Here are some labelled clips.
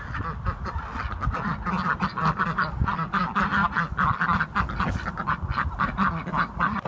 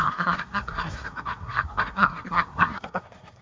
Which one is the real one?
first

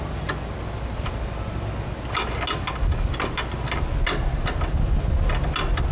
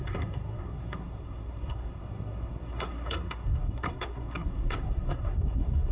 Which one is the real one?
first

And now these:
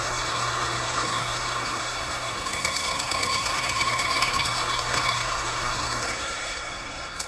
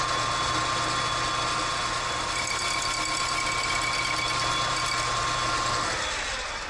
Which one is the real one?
second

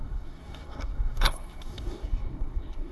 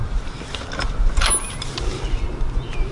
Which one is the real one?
second